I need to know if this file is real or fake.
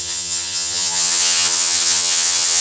fake